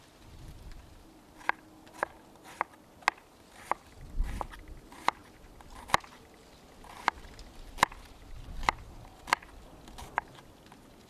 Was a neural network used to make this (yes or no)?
no